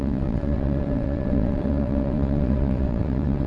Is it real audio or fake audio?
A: fake